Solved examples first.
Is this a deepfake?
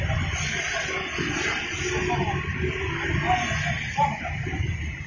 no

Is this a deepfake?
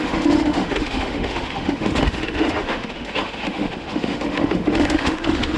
yes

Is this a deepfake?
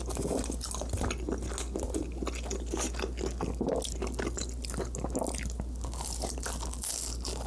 no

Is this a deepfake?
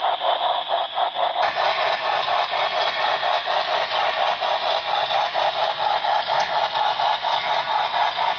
no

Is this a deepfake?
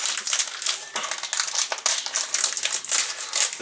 no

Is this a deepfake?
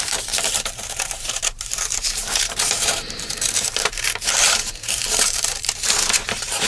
yes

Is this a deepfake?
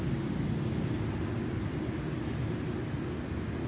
no